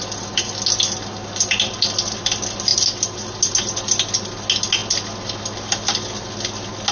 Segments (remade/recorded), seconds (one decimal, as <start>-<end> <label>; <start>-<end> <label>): 0.0-6.9 recorded